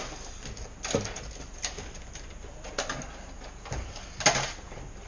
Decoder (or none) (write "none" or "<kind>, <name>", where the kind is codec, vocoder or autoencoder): none